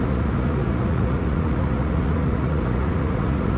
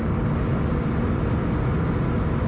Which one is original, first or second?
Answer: second